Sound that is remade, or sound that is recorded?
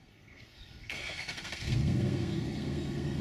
remade